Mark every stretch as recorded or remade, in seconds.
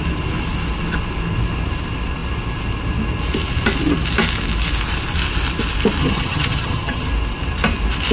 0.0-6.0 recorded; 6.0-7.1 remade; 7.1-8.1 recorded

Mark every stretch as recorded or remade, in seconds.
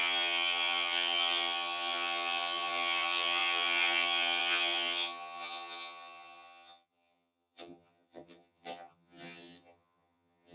0.0-10.5 remade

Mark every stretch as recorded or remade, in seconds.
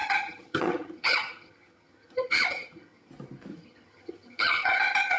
0.0-3.1 remade; 3.1-3.5 recorded; 3.5-5.2 remade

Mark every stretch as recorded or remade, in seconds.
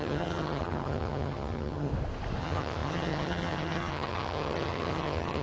0.0-1.9 remade; 1.9-2.4 recorded; 2.4-5.4 remade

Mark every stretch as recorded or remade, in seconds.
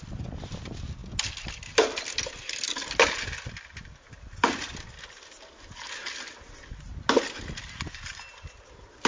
0.0-9.1 recorded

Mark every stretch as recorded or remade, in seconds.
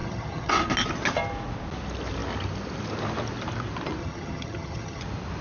0.0-0.5 remade; 0.5-4.0 recorded; 4.0-5.0 remade; 5.0-5.4 recorded